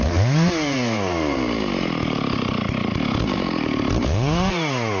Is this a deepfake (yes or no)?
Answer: yes